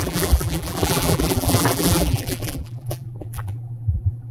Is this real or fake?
fake